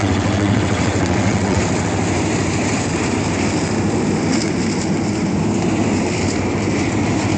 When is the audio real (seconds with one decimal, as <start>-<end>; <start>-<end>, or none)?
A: 1.6-7.4